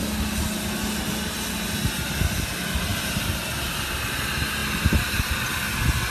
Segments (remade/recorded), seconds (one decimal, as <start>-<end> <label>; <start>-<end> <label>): 0.0-6.1 recorded